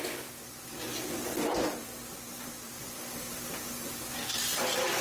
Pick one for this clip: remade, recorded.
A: remade